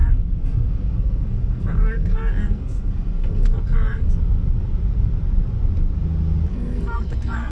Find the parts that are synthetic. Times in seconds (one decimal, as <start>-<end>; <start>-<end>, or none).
0.0-4.1; 6.5-7.5